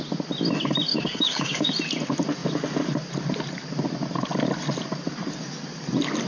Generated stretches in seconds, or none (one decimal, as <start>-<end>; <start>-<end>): 0.9-1.7